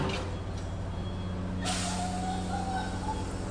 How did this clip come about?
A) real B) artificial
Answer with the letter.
A